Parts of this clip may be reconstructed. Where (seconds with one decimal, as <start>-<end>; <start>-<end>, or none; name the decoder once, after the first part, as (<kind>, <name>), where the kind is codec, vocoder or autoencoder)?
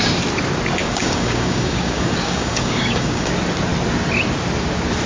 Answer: 0.8-3.3 (codec, DAC)